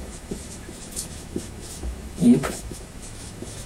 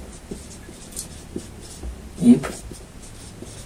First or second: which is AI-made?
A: first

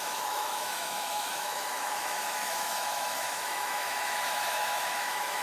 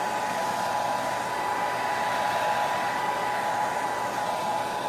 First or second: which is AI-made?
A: first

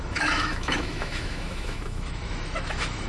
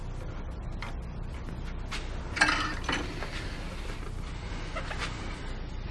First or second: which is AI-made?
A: first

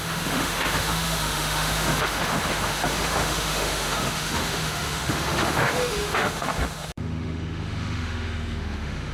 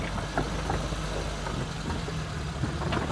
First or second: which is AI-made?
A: first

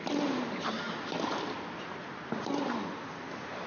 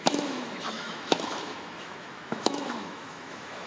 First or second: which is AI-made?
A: second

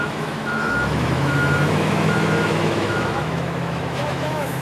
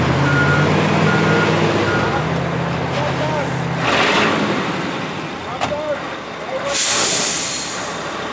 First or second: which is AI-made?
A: first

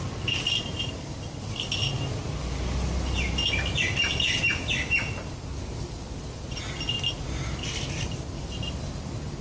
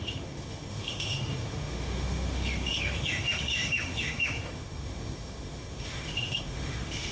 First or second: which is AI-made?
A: second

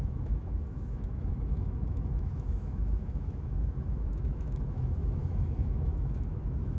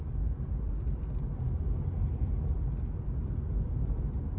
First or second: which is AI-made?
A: first